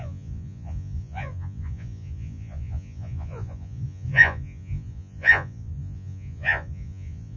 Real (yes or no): no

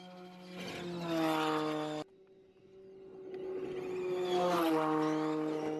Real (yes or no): yes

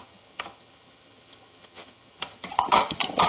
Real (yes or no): no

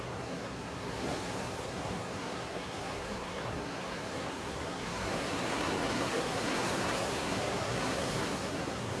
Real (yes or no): no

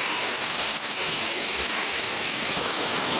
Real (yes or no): no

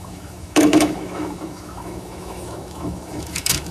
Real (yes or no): no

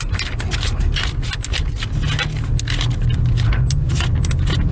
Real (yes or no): yes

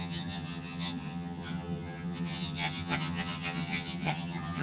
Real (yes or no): no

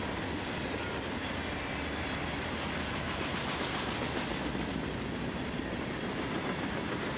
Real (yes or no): yes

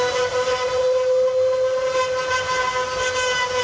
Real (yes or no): yes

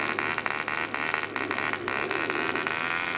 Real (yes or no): yes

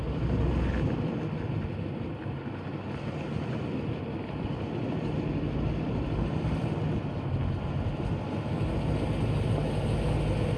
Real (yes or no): yes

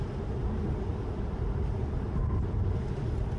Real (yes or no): yes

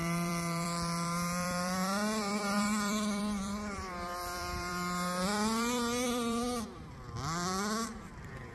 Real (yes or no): no